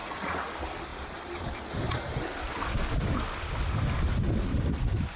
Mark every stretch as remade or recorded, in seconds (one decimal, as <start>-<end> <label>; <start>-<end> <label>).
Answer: 0.0-0.5 remade; 0.5-5.2 recorded